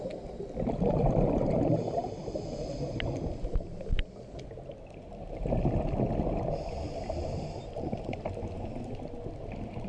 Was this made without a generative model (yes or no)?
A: yes